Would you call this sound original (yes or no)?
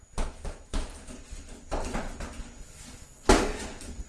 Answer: yes